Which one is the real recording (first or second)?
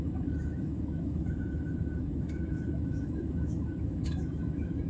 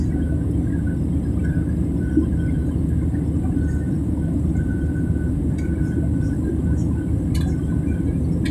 second